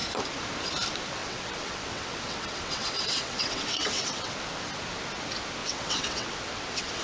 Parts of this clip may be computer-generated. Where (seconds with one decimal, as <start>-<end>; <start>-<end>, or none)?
1.2-4.3; 5.6-7.0